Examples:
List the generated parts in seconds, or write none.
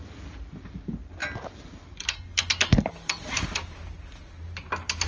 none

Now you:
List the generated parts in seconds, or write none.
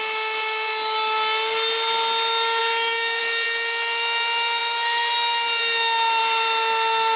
2.6-3.2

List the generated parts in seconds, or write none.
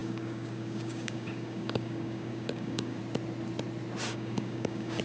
0.0-3.0; 4.1-5.0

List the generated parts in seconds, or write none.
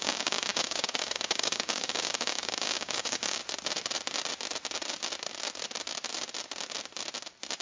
0.0-3.4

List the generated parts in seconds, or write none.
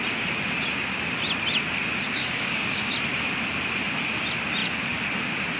2.2-2.9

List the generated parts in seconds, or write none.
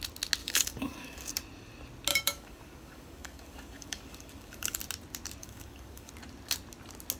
0.4-1.3; 2.1-4.8; 5.4-6.1